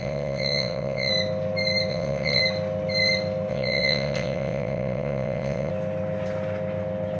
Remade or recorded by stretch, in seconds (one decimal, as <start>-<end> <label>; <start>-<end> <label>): 0.0-1.1 remade; 1.1-1.9 recorded; 1.9-2.4 remade; 2.4-3.5 recorded; 3.5-5.7 remade; 5.7-7.2 recorded